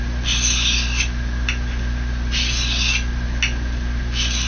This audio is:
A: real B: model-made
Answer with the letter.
A